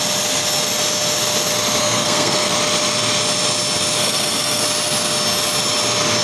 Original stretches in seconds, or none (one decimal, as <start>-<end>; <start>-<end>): 0.0-1.8; 2.5-4.0; 4.6-6.2